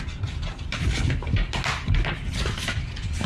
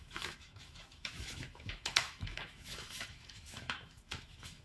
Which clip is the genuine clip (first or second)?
first